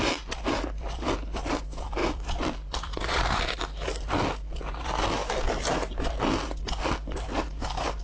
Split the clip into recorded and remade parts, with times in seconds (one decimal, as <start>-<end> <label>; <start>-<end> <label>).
0.0-2.0 recorded; 2.0-3.3 remade; 3.3-8.0 recorded